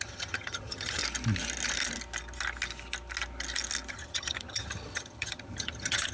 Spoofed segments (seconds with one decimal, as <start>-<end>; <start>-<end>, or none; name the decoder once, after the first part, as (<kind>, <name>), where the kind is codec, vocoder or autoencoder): 0.0-1.0 (vocoder, HiFi-GAN); 3.9-6.1